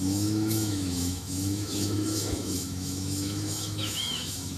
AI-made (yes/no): yes